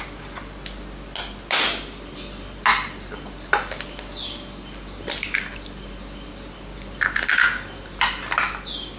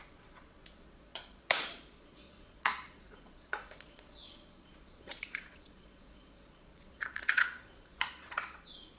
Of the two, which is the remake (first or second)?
second